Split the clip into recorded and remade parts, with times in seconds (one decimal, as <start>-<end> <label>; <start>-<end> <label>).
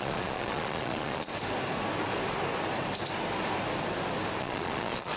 0.0-1.3 remade; 1.3-4.4 recorded; 4.4-5.2 remade